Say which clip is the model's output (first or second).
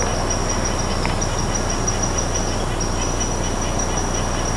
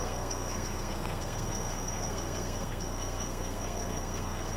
second